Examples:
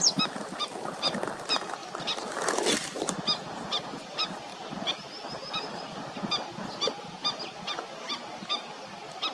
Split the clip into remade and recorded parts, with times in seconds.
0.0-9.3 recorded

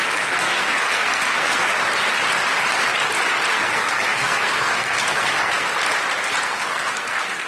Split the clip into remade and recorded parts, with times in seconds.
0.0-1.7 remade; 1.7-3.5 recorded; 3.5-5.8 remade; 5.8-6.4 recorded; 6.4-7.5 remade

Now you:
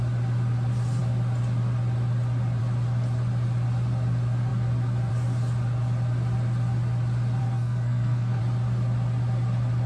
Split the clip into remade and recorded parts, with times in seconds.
0.0-7.4 recorded; 7.4-8.4 remade; 8.4-9.9 recorded

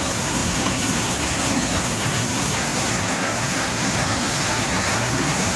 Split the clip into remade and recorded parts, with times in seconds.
0.0-5.6 remade

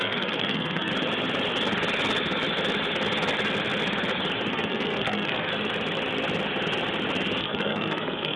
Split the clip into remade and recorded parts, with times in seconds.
0.0-0.9 remade; 0.9-4.5 recorded; 4.5-5.5 remade; 5.5-7.4 recorded; 7.4-8.4 remade

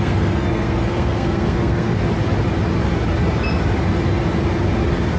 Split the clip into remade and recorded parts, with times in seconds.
0.0-2.0 remade; 2.0-5.2 recorded

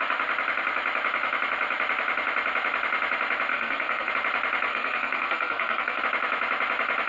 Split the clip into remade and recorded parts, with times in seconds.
0.0-3.5 recorded; 3.5-4.1 remade; 4.1-4.7 recorded; 4.7-6.0 remade; 6.0-7.1 recorded

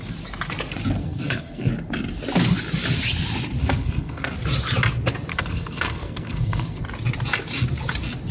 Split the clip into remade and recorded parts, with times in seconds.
0.0-1.0 recorded; 1.0-1.7 remade; 1.7-3.6 recorded; 3.6-4.3 remade; 4.3-5.3 recorded; 5.3-6.8 remade; 6.8-8.3 recorded